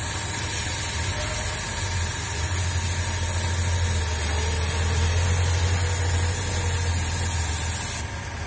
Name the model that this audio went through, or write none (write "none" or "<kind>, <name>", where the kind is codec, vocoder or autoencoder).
none